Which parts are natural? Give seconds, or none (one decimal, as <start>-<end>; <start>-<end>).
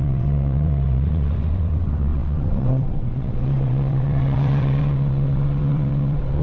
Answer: none